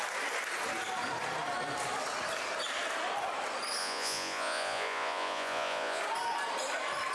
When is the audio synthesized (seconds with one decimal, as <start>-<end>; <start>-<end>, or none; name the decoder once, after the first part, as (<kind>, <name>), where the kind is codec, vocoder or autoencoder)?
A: 3.8-6.0 (vocoder, Vocos)